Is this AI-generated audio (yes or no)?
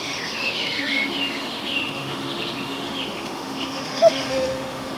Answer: yes